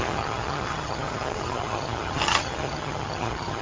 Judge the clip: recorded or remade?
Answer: remade